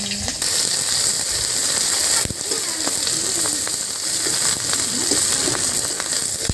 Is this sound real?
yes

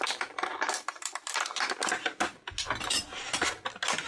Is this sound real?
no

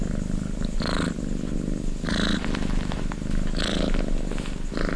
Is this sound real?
yes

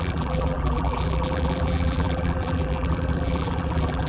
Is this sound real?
no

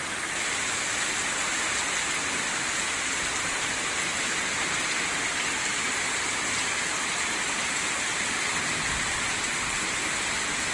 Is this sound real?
yes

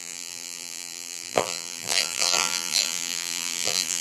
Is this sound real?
no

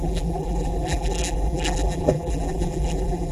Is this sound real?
no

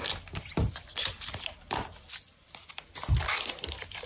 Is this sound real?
no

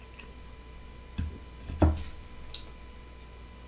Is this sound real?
yes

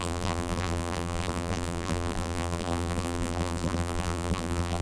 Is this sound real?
no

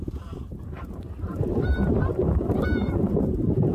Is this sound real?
no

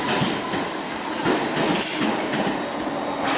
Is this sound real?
yes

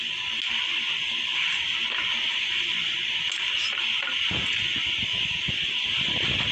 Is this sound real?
yes